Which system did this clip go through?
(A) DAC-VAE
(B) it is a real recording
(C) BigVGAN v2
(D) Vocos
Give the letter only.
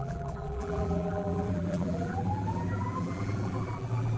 C